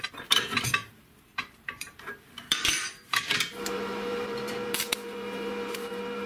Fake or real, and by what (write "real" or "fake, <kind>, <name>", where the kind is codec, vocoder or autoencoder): fake, vocoder, BigVGAN v2